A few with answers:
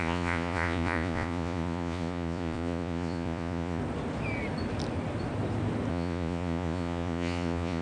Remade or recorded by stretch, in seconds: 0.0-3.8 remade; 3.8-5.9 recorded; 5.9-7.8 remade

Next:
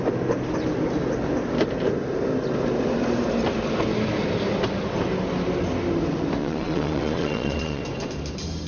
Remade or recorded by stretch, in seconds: 0.0-6.4 recorded; 6.4-7.8 remade; 7.8-8.7 recorded

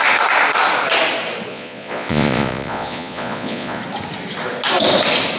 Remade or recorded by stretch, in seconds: 0.0-1.5 recorded; 1.5-3.8 remade; 3.8-5.4 recorded

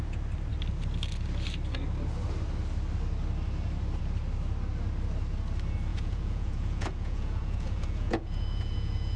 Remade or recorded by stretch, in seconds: 0.0-5.9 recorded; 5.9-9.2 remade